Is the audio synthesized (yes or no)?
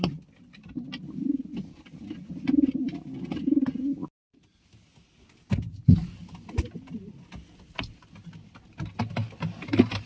no